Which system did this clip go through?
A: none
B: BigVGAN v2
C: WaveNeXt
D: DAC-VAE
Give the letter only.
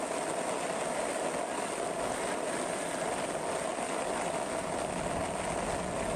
A